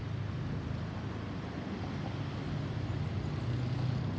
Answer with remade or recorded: recorded